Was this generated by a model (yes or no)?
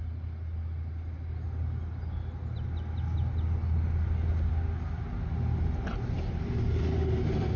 no